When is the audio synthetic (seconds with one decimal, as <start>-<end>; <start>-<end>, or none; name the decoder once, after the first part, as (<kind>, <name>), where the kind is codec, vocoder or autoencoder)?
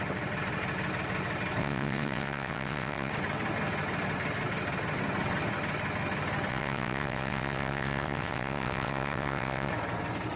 1.6-3.1 (vocoder, WaveNeXt); 6.5-9.7